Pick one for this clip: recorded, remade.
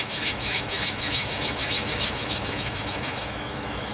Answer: remade